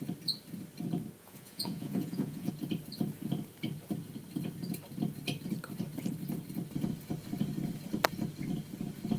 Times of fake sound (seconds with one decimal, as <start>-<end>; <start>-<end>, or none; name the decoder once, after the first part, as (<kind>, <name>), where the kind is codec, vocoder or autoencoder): 1.2-2.5 (vocoder, Vocos)